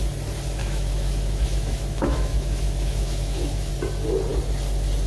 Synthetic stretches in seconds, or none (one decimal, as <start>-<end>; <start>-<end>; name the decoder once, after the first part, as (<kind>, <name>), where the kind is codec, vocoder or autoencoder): 0.6-3.7 (autoencoder, DAC-VAE)